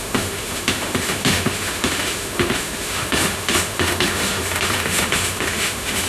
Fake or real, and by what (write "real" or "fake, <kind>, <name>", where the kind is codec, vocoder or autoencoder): fake, autoencoder, DAC-VAE